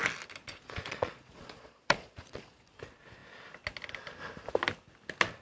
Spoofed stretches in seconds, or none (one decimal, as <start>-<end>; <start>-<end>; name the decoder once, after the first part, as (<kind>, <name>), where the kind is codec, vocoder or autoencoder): 0.4-2.8 (vocoder, Vocos)